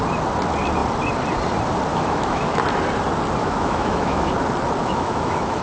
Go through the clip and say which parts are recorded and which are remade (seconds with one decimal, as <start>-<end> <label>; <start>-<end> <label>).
0.0-1.9 recorded; 1.9-2.6 remade; 2.6-3.4 recorded; 3.4-4.3 remade; 4.3-4.8 recorded; 4.8-5.6 remade